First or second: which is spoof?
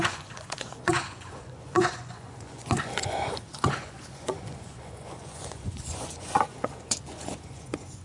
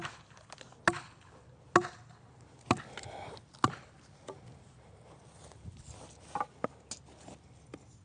first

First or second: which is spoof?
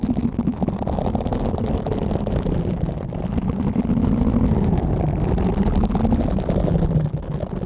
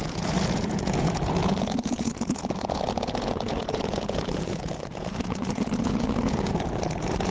second